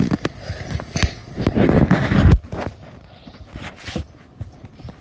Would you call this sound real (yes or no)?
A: yes